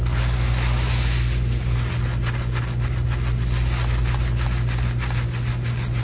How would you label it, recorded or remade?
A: recorded